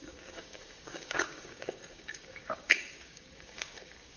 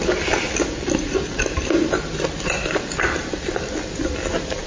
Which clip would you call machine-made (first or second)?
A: first